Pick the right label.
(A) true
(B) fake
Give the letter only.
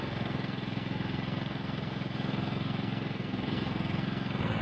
B